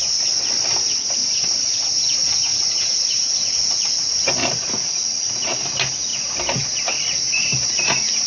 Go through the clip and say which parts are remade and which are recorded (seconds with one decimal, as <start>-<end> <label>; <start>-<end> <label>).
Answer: 0.0-2.5 recorded; 2.5-3.6 remade; 3.6-4.4 recorded; 4.4-4.9 remade; 4.9-8.3 recorded